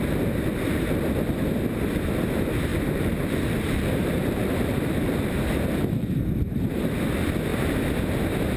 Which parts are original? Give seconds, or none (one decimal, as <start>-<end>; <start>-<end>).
0.0-2.7; 7.0-8.6